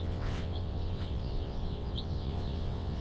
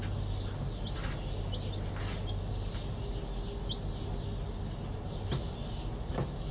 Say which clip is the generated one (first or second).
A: first